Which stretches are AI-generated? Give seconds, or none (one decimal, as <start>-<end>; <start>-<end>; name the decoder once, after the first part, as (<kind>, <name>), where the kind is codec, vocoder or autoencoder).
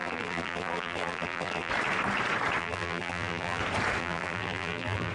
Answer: 0.0-1.7 (vocoder, BigVGAN v2); 2.6-3.6; 4.0-5.1